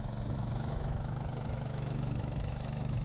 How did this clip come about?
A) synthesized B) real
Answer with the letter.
A